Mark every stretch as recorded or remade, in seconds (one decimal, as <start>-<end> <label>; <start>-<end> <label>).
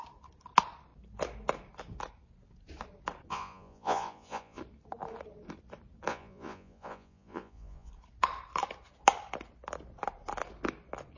0.0-3.3 recorded; 3.3-4.6 remade; 4.6-6.1 recorded; 6.1-7.9 remade; 7.9-11.2 recorded